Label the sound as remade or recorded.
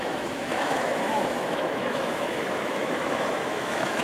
remade